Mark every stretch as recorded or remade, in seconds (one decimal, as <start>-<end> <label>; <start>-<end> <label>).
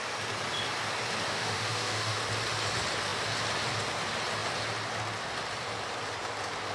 0.0-1.3 recorded; 1.3-2.2 remade; 2.2-6.7 recorded